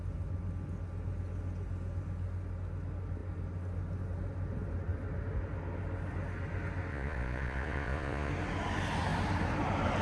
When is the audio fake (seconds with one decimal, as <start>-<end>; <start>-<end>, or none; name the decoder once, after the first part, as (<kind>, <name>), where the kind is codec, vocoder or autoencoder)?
6.9-8.3 (vocoder, Vocos)